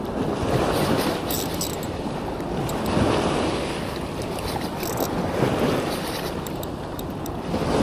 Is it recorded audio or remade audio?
recorded